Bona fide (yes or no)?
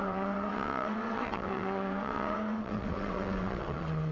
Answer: no